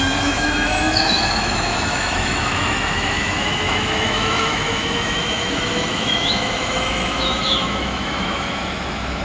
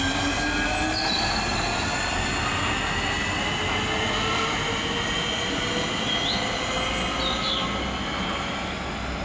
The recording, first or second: second